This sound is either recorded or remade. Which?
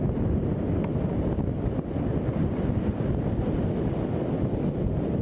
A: recorded